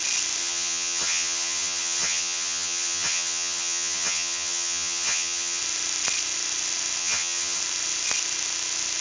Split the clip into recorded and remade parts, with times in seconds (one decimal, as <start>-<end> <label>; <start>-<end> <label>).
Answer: 0.0-0.4 recorded; 0.4-5.6 remade; 5.6-7.0 recorded; 7.0-7.6 remade; 7.6-9.0 recorded